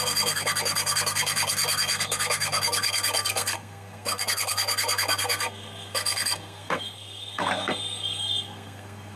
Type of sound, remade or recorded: remade